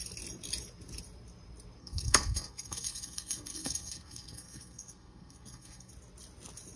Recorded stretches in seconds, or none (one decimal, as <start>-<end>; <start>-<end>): 0.0-1.8; 5.9-6.8